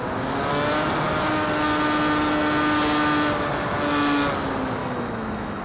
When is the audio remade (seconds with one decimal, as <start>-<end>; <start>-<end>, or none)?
4.8-5.6